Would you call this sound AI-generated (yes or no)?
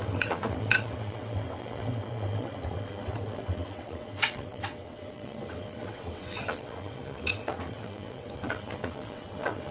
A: yes